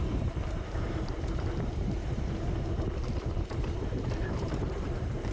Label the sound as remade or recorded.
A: remade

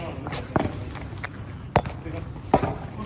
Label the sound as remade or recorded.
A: recorded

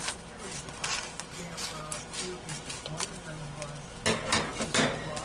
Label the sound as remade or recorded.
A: recorded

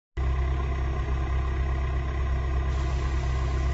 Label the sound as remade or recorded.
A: recorded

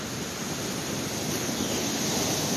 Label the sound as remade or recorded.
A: recorded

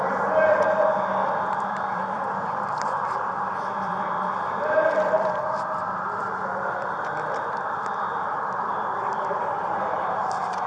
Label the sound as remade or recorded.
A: remade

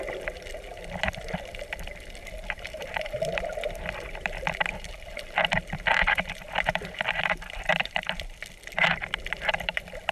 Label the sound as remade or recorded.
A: remade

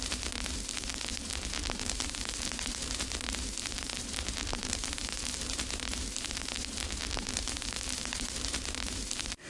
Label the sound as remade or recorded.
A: remade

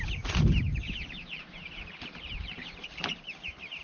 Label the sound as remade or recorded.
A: remade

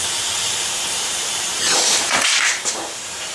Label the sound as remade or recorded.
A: remade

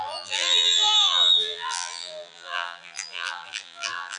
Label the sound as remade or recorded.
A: remade